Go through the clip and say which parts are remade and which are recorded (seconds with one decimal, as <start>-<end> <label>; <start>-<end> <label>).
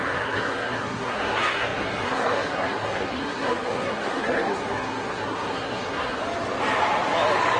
0.0-6.2 remade; 6.2-7.6 recorded